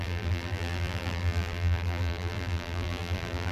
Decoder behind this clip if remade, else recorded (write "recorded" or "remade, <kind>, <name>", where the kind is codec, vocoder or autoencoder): remade, vocoder, BigVGAN v2